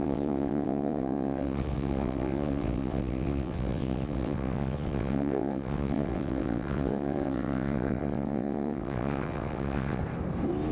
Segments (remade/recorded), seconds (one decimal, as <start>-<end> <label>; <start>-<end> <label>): 0.0-10.0 remade; 10.0-10.7 recorded